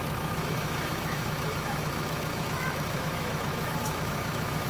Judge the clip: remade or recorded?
remade